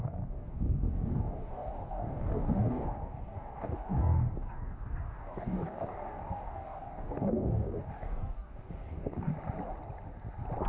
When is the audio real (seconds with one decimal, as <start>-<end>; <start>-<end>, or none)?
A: 9.3-10.7